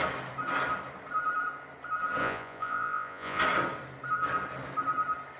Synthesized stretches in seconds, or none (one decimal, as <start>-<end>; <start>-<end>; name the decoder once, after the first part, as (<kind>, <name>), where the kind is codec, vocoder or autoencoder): 2.2-3.4 (vocoder, Vocos)